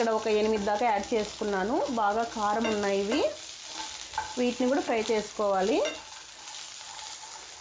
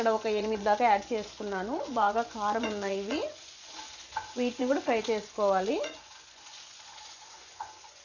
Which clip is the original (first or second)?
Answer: first